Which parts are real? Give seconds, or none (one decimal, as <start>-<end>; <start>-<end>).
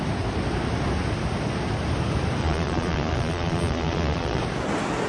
0.0-2.4; 4.4-5.1